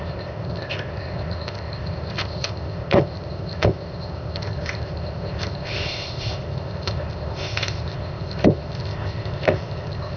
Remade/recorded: remade